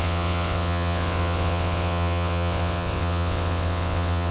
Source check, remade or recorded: remade